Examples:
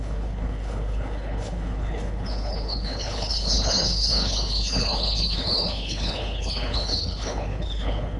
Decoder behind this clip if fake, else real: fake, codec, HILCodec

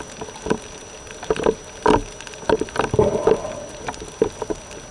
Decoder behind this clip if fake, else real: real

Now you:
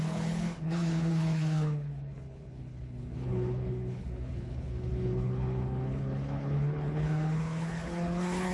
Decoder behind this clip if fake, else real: fake, codec, HILCodec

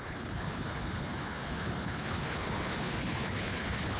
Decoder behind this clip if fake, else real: fake, codec, HILCodec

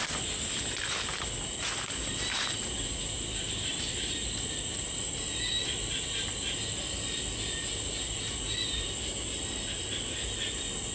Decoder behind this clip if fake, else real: real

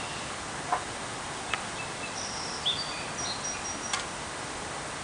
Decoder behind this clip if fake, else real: real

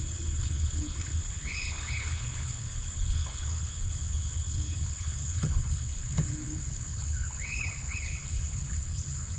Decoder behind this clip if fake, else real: fake, codec, HILCodec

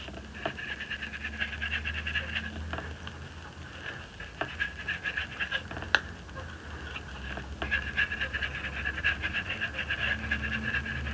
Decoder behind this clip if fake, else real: real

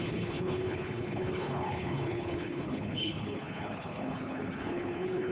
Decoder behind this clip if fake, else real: fake, codec, HILCodec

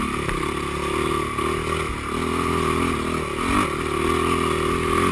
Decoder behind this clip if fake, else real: real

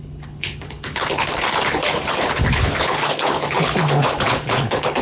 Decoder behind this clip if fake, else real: fake, codec, HILCodec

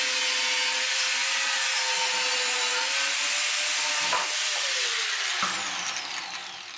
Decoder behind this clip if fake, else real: real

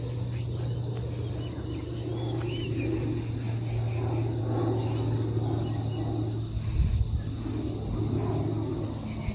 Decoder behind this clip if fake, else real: real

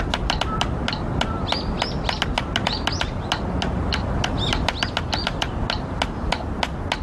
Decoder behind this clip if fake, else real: real